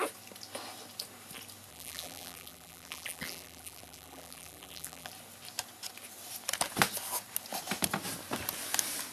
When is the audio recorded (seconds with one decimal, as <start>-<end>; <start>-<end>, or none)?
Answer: 0.0-1.7; 5.1-9.1